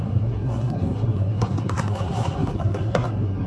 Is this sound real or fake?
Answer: fake